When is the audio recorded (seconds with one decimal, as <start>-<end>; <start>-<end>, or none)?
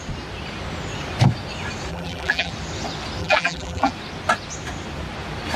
0.0-1.9; 2.5-3.2; 3.9-5.6